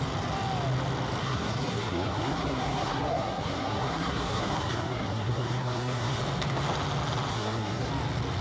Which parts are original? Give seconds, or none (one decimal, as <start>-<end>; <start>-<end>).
0.0-1.2; 6.2-7.3; 7.9-8.4